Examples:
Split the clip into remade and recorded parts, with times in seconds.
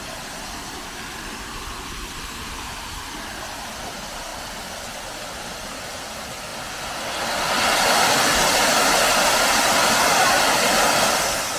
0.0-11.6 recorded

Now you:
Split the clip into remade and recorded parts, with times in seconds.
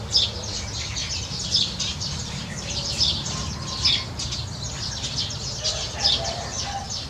0.0-1.0 recorded; 1.0-3.6 remade; 3.6-6.5 recorded; 6.5-7.1 remade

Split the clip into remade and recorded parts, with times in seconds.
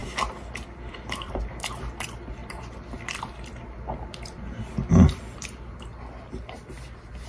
0.0-7.3 recorded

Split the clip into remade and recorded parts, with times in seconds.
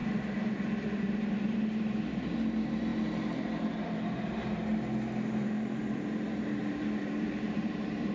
0.0-1.0 recorded; 1.0-8.1 remade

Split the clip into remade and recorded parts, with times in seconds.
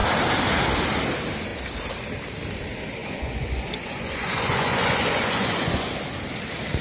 0.0-3.0 recorded; 3.0-5.9 remade; 5.9-6.8 recorded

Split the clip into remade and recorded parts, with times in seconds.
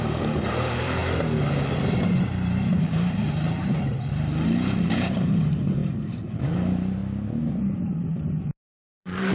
0.0-7.0 remade; 7.0-7.6 recorded; 7.6-9.3 remade